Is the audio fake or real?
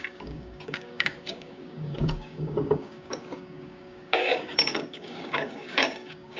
fake